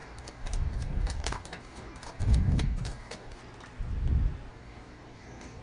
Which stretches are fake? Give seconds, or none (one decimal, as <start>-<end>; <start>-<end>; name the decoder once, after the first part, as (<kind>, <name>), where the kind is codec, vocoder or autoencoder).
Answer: 0.0-3.4 (codec, DAC); 4.5-5.6